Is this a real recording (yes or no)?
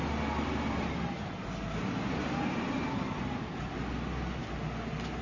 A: yes